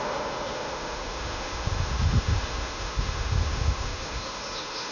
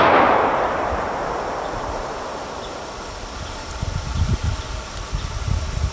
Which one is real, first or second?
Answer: second